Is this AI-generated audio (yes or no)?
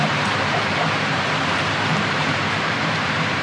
yes